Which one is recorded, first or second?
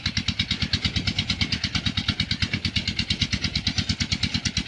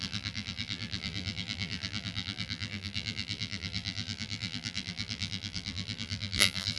first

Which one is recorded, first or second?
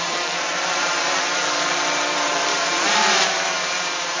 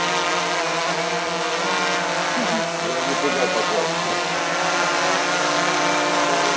second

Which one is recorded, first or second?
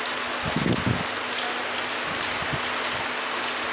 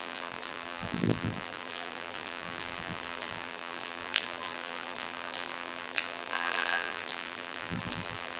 first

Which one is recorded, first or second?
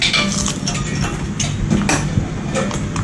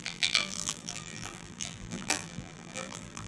first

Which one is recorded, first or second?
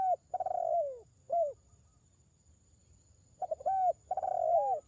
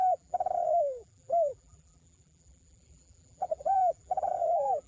first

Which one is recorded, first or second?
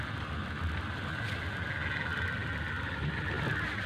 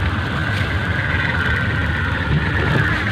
first